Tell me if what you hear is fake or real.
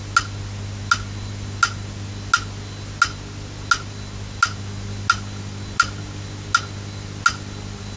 real